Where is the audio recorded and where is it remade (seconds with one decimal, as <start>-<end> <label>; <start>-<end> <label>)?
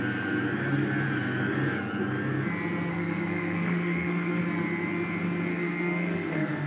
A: 0.0-2.9 recorded; 2.9-4.4 remade; 4.4-5.5 recorded; 5.5-6.7 remade